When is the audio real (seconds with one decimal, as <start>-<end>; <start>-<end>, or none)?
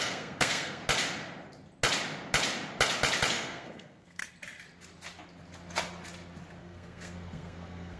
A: 0.8-3.3; 4.2-6.6